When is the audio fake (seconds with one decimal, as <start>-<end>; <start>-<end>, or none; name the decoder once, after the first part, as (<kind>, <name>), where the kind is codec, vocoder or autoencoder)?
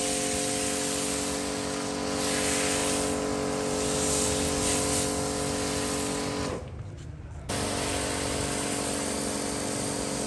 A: none